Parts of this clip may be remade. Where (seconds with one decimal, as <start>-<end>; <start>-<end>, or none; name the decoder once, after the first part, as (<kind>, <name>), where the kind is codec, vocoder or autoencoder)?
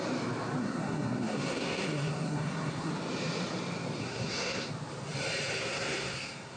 0.6-2.9 (codec, SNAC); 4.0-4.7; 5.6-6.6